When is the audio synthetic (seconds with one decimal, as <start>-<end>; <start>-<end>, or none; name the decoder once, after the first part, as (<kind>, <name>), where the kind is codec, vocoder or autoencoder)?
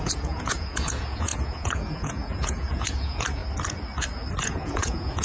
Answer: 0.0-3.4 (vocoder, Vocos); 4.4-5.2